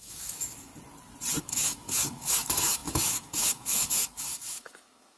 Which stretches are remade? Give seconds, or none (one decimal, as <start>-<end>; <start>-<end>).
0.0-0.7; 1.4-5.2